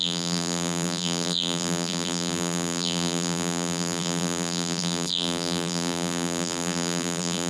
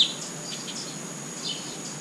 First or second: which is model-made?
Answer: first